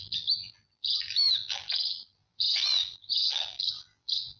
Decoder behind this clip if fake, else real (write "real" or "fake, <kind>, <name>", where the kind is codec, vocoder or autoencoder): fake, vocoder, BigVGAN v2